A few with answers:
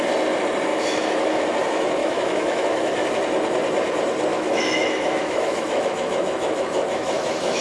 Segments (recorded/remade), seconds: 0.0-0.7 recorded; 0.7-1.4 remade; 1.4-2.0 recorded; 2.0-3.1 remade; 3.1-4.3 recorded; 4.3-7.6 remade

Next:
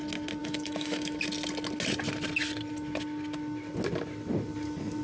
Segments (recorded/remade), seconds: 0.0-0.4 recorded; 0.4-1.2 remade; 1.2-5.0 recorded